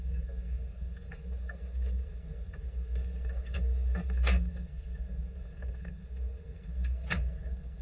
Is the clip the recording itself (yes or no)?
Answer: no